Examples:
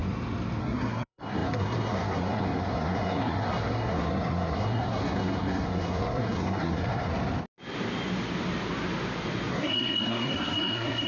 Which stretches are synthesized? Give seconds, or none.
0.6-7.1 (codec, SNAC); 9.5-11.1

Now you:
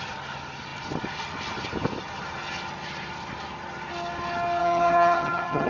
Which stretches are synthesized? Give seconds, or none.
4.6-5.7 (vocoder, HiFi-GAN)